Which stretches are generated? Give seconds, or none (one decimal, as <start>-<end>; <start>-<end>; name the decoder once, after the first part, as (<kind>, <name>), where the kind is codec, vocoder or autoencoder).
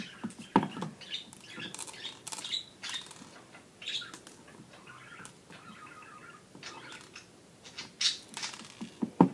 none